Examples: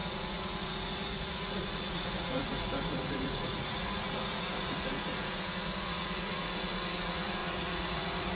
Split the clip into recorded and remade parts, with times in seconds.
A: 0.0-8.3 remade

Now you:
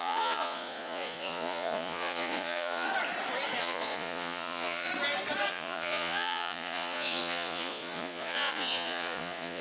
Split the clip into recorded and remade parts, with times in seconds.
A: 0.0-2.9 remade; 2.9-3.6 recorded; 3.6-4.9 remade; 4.9-5.5 recorded; 5.5-9.6 remade